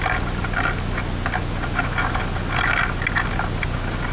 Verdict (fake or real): real